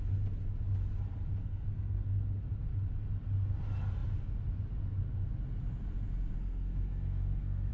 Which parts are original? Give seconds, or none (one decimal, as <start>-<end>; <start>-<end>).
0.0-1.4; 2.4-6.4